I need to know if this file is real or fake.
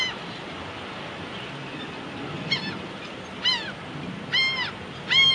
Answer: real